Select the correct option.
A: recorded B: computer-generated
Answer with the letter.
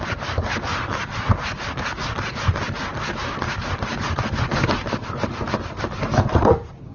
A